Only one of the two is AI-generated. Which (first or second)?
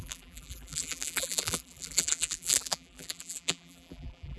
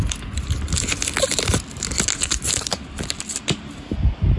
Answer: first